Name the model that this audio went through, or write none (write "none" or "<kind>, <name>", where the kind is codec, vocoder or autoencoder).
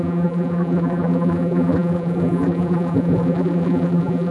vocoder, BigVGAN v2